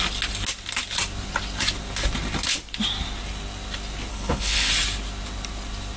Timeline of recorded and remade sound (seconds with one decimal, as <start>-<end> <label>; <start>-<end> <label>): 0.0-4.1 recorded; 4.1-4.7 remade; 4.7-6.0 recorded